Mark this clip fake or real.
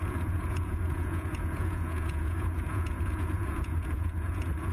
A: fake